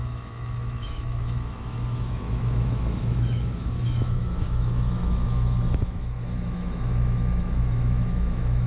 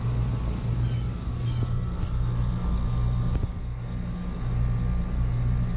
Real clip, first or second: second